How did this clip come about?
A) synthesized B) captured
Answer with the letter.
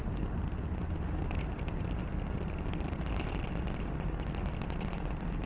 B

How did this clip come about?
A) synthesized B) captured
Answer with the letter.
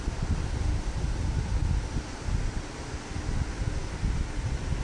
B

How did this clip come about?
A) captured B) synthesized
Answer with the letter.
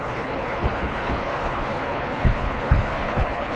B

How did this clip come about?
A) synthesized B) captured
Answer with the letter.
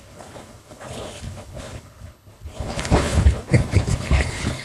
A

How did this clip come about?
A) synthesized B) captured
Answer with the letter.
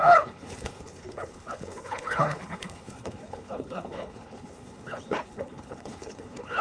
A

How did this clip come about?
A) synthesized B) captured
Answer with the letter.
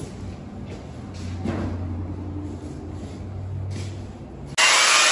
B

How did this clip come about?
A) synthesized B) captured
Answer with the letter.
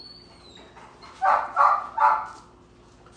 B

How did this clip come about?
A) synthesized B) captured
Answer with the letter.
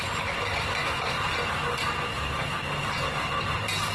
B